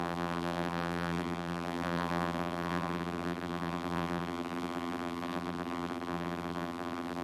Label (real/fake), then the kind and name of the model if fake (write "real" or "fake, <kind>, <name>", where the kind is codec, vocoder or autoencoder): fake, vocoder, BigVGAN v2